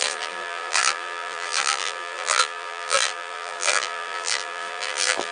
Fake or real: fake